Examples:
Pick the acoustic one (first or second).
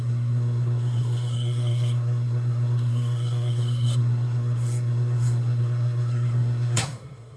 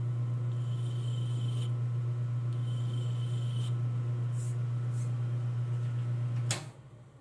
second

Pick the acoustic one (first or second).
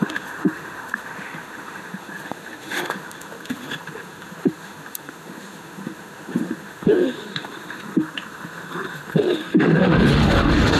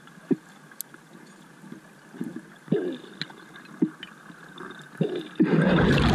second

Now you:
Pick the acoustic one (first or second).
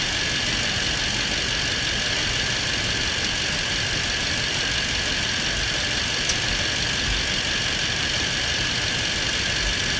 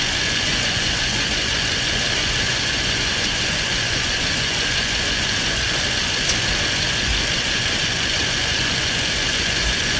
first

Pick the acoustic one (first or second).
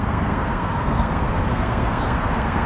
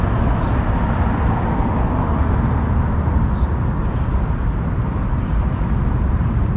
second